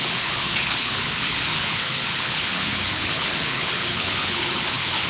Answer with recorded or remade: remade